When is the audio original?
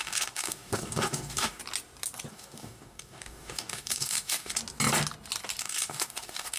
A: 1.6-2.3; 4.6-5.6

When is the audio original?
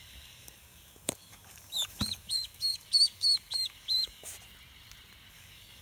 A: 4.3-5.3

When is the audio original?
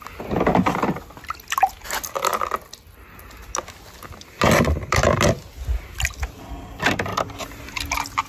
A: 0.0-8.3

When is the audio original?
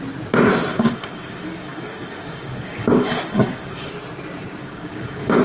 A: 0.0-0.7; 3.9-4.6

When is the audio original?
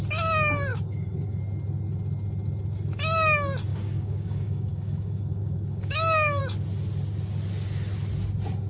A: 0.0-0.7; 1.4-3.7; 6.4-8.7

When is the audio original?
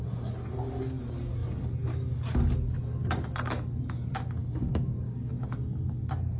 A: 0.0-4.4; 5.3-6.4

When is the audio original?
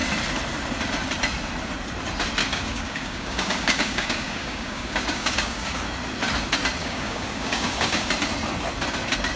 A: 0.0-2.4; 5.8-6.8; 8.1-9.4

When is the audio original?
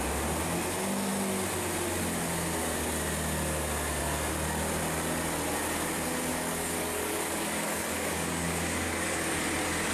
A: 0.0-6.3; 9.4-9.9